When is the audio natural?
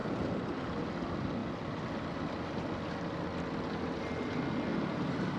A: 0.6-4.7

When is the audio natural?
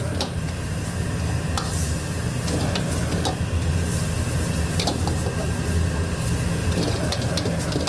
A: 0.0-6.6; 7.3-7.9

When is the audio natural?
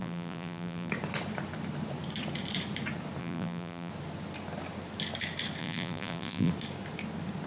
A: 0.9-3.2; 3.9-5.6; 6.5-7.5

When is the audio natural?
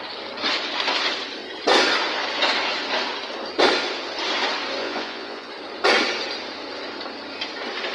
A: 0.0-4.8; 5.5-7.9